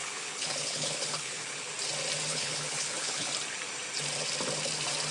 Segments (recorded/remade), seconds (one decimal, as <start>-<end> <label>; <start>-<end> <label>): 0.0-1.7 remade; 1.7-2.3 recorded; 2.3-3.3 remade; 3.3-5.1 recorded